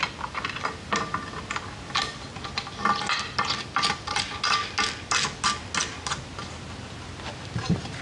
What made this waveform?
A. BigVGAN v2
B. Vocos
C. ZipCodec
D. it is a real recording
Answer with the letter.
D